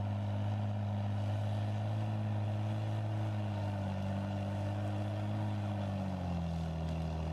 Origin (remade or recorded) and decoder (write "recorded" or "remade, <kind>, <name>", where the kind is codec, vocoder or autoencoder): recorded